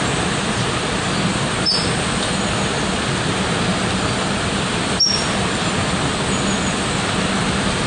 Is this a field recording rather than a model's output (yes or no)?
yes